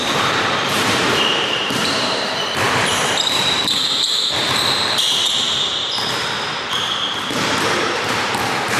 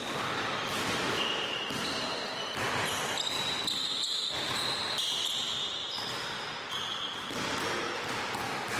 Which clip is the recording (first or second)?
second